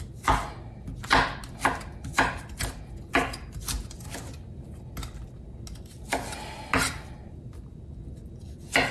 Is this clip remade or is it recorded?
recorded